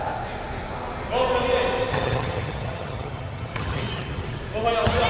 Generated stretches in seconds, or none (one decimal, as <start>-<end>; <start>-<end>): 1.9-4.4